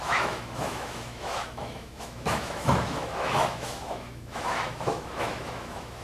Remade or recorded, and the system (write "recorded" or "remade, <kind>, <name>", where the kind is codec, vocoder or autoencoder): remade, autoencoder, DAC-VAE